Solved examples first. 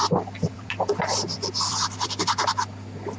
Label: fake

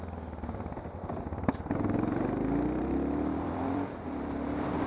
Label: fake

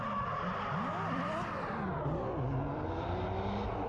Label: real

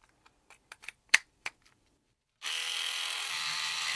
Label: fake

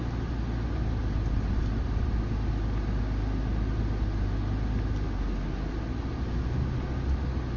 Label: real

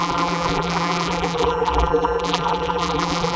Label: fake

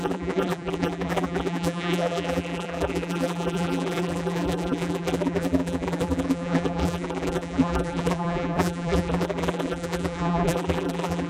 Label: fake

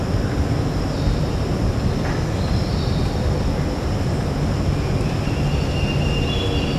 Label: real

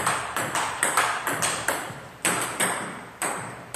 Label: fake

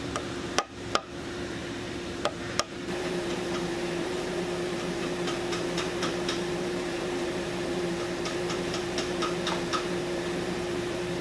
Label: fake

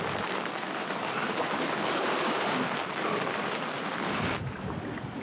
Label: fake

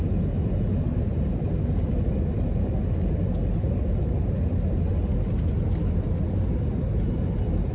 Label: real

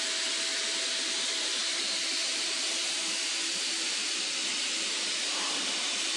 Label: fake